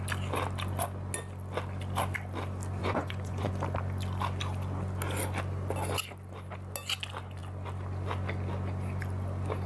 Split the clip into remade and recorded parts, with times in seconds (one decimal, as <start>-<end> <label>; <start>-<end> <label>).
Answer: 0.0-2.8 recorded; 2.8-3.5 remade; 3.5-9.7 recorded